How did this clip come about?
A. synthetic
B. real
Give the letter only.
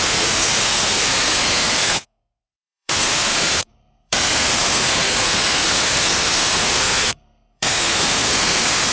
A